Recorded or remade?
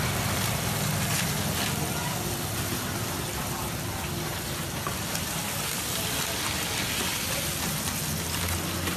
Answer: recorded